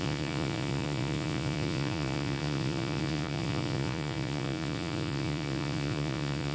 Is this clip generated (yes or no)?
yes